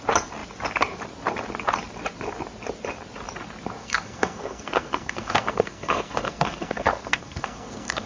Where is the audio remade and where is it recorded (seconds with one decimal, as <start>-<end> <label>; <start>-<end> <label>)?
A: 0.0-3.8 recorded; 3.8-8.1 remade